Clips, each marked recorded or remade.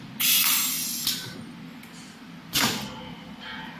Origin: recorded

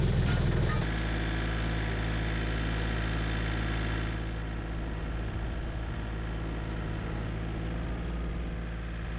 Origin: recorded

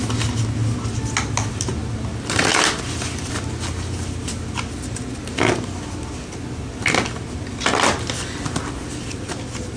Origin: recorded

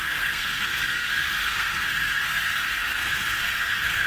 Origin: remade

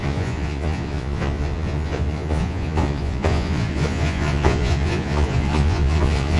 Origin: remade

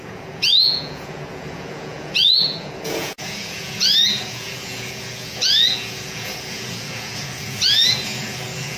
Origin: remade